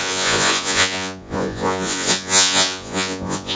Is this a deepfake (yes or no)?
yes